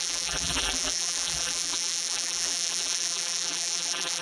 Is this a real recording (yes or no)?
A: no